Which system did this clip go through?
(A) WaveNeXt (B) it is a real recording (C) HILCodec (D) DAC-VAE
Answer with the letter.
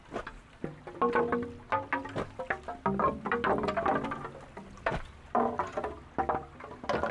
B